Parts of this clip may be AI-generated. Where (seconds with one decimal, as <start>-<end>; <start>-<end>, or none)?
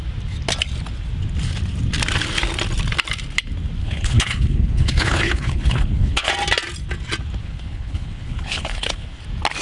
3.8-6.3; 7.4-9.2